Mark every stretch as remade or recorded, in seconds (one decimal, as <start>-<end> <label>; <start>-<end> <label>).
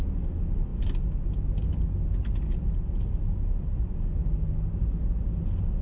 0.0-5.8 recorded